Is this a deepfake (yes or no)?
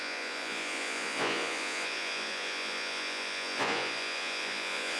yes